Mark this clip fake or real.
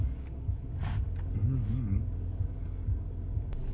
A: fake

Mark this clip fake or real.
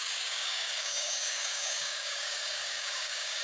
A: fake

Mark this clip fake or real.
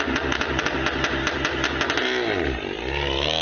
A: real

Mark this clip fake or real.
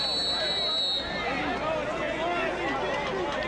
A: real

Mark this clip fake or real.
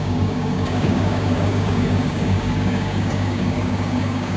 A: fake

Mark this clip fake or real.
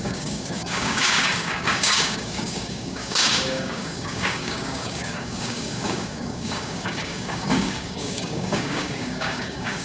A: fake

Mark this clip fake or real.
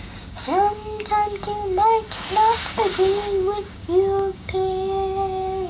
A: fake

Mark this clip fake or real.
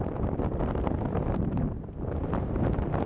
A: real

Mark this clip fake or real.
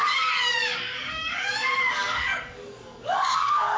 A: fake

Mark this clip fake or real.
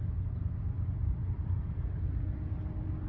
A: real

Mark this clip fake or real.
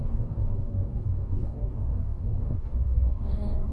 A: fake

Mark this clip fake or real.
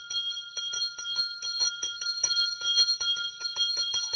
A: fake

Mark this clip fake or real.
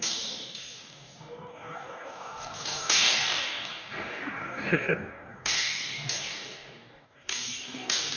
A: fake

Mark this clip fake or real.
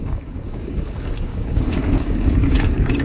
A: fake